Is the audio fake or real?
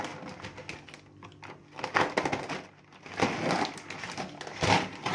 real